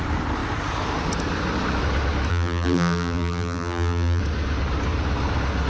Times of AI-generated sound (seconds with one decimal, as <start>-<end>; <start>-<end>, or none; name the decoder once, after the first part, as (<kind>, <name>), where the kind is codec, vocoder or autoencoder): 2.3-4.2 (vocoder, BigVGAN v2)